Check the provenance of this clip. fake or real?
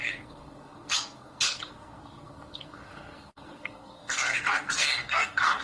fake